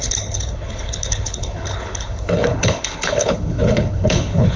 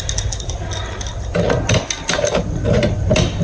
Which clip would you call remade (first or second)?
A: first